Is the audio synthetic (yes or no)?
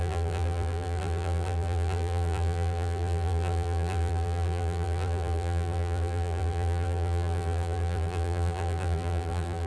yes